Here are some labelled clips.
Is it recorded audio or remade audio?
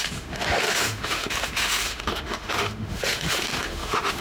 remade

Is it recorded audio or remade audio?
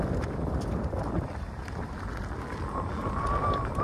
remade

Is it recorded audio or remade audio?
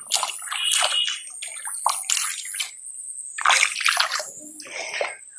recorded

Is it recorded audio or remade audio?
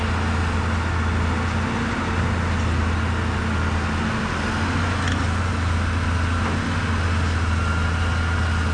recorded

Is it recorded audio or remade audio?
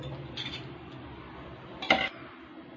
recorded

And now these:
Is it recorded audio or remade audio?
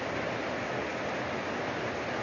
recorded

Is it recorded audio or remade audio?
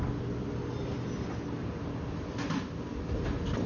recorded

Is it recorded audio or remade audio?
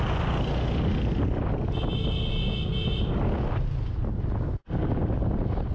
recorded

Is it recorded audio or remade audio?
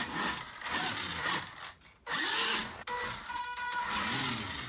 recorded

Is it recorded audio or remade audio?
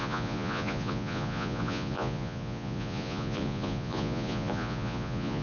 remade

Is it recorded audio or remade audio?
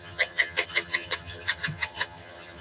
remade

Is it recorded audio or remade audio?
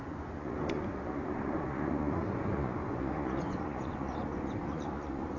remade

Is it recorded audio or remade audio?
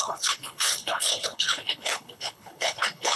remade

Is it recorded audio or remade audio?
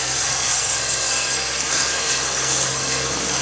remade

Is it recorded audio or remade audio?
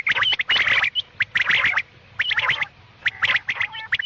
recorded